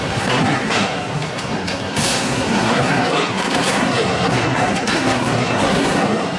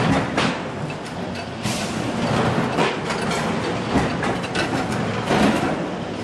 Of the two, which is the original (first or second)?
second